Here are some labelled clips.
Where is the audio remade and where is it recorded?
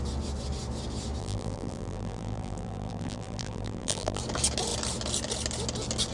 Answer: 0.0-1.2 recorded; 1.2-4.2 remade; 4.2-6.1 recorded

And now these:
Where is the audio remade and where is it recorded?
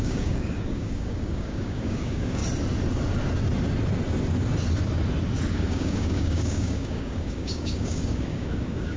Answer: 0.0-2.4 remade; 2.4-5.5 recorded; 5.5-9.0 remade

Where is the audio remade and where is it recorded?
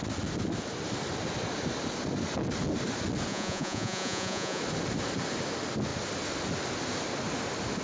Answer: 0.0-3.3 recorded; 3.3-4.6 remade; 4.6-7.8 recorded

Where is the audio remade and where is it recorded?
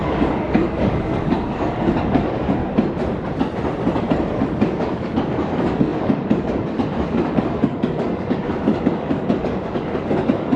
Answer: 0.0-2.6 remade; 2.6-4.5 recorded; 4.5-10.6 remade